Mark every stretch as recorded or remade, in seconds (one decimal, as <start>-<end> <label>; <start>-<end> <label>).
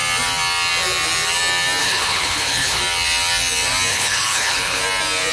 0.0-1.8 recorded; 1.8-2.8 remade; 2.8-3.9 recorded; 3.9-4.8 remade; 4.8-5.3 recorded